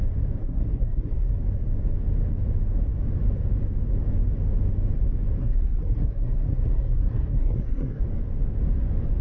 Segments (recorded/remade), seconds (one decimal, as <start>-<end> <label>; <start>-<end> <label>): 0.0-0.4 recorded; 0.4-1.3 remade; 1.3-5.4 recorded; 5.4-8.0 remade; 8.0-9.2 recorded